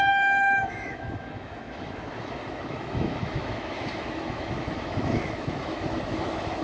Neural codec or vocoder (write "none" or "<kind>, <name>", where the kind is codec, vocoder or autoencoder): autoencoder, DAC-VAE